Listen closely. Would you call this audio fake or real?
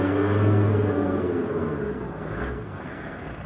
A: fake